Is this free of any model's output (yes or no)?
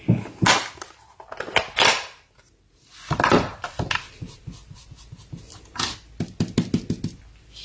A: yes